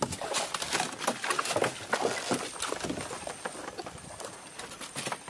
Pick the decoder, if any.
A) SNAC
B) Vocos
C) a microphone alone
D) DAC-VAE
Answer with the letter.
C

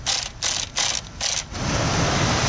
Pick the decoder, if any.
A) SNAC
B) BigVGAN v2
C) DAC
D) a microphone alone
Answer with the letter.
D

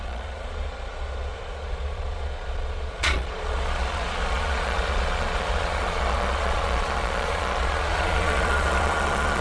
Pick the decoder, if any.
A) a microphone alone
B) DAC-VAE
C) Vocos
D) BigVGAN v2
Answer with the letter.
C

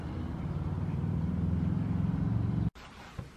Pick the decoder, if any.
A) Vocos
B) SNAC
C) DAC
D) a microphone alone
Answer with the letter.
D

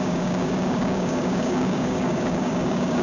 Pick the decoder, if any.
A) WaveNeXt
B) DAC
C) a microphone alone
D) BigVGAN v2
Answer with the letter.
B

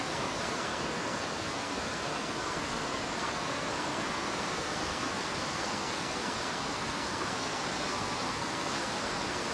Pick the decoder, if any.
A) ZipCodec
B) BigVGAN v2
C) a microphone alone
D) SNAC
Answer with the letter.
D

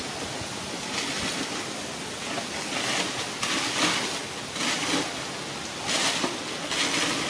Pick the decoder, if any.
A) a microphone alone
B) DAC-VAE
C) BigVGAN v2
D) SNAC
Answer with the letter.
A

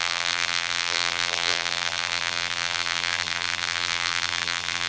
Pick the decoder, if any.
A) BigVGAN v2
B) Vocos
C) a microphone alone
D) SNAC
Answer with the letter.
A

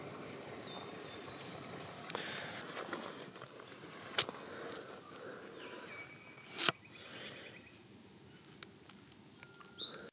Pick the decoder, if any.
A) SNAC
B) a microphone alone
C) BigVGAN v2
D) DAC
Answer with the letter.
B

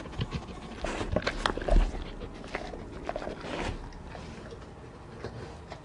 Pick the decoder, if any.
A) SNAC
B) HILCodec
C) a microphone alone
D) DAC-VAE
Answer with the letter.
C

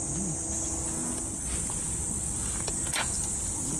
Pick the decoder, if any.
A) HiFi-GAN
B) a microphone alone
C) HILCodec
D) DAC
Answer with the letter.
B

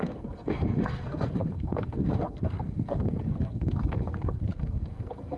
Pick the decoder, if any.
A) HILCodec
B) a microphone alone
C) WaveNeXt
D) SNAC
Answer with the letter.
D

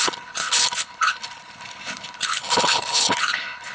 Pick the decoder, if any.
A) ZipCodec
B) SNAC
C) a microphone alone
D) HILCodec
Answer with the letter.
D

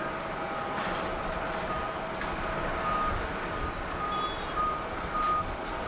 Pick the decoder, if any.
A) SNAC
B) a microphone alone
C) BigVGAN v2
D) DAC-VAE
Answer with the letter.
B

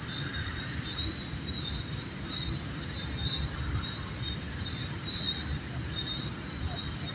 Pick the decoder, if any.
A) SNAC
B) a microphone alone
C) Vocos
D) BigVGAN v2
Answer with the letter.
B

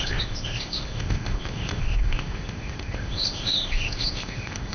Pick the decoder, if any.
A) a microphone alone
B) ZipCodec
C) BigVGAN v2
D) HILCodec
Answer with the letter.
B